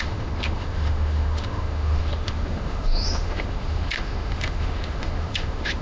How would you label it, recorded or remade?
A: remade